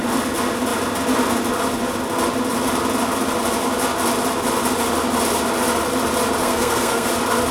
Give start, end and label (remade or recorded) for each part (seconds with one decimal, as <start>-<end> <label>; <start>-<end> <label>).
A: 0.0-6.4 recorded; 6.4-7.1 remade; 7.1-7.5 recorded